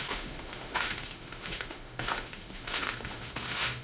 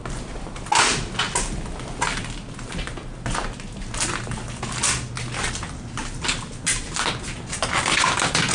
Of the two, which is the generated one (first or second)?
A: first